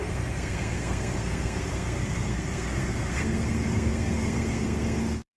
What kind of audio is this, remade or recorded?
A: remade